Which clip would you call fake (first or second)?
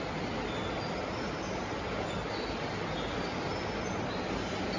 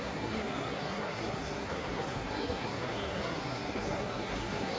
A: second